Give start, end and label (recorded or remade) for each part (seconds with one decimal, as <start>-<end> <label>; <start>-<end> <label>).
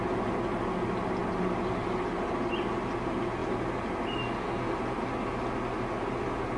0.0-6.6 recorded